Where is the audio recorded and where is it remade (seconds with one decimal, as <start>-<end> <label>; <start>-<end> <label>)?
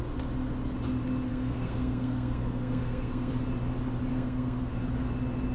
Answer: 0.0-1.3 recorded; 1.3-3.3 remade; 3.3-4.1 recorded; 4.1-4.7 remade; 4.7-5.5 recorded